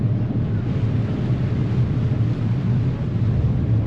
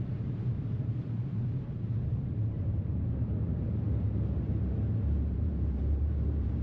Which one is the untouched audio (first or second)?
first